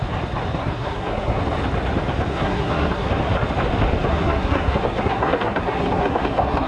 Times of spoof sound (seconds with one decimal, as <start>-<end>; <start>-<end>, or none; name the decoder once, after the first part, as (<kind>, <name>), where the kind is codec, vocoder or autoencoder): 0.6-1.4 (codec, SNAC); 2.3-3.1; 4.1-6.7